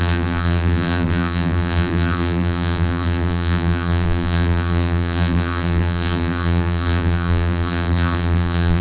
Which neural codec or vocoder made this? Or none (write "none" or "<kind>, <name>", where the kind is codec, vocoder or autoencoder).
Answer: vocoder, BigVGAN v2